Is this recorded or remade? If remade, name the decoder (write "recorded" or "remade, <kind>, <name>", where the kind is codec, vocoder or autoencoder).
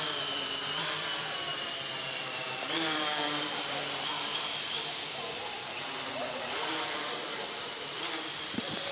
remade, vocoder, BigVGAN v2